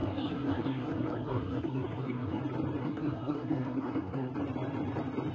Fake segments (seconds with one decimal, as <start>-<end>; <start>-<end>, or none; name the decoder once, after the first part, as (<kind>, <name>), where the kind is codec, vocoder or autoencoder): 0.0-2.4 (codec, SNAC); 2.8-4.3